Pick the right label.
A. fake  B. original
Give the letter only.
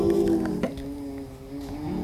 B